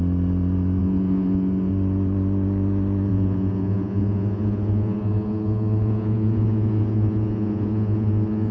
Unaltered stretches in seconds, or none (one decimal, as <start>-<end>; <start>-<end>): 0.0-0.8; 1.7-3.1